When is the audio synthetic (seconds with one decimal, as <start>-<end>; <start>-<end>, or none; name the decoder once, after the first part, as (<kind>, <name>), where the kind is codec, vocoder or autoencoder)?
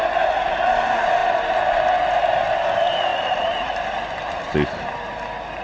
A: 3.1-3.7 (vocoder, Vocos)